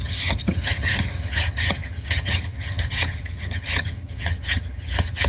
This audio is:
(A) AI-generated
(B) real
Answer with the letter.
A